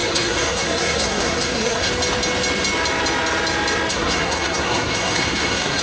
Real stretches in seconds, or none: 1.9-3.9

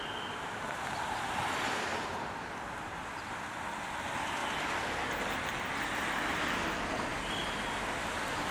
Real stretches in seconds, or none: 0.0-8.5

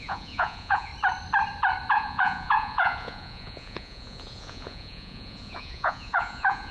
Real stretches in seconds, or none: 0.9-1.9

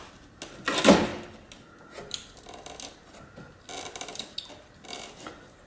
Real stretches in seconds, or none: 0.0-5.7